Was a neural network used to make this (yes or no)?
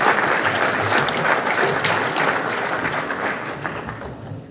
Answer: no